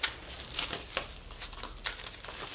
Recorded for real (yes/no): yes